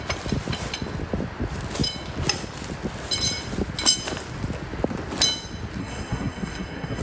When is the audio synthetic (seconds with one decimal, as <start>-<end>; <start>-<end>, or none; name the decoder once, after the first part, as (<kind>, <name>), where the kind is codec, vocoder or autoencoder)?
5.8-7.0 (codec, SNAC)